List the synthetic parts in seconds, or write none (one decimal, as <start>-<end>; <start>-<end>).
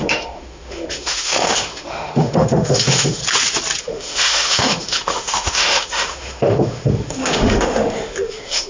0.0-3.2; 3.8-8.7